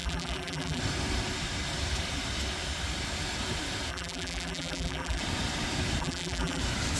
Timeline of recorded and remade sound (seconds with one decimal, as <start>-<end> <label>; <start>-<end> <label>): 0.0-0.8 remade; 0.8-3.9 recorded; 3.9-5.2 remade; 5.2-6.0 recorded; 6.0-6.6 remade; 6.6-7.0 recorded